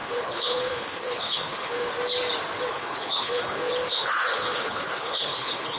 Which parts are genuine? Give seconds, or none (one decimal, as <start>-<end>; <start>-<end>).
1.9-2.7